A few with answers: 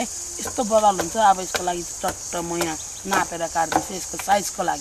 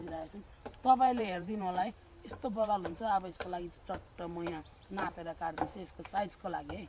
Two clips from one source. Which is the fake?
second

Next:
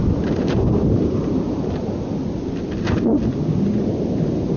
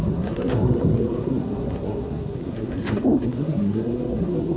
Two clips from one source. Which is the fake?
second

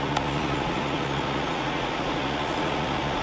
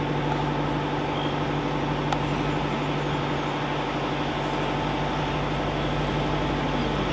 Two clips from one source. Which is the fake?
first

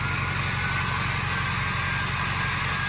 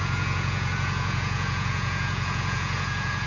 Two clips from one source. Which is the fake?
second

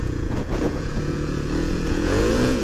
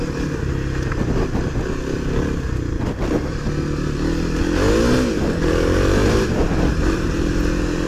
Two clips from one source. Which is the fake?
first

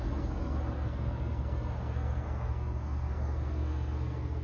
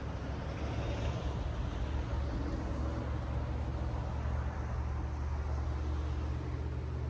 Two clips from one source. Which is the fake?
first